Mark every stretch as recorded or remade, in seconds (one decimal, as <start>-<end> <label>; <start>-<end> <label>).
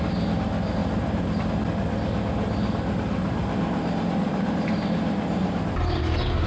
0.0-0.8 recorded; 0.8-1.4 remade; 1.4-3.2 recorded; 3.2-6.0 remade; 6.0-6.5 recorded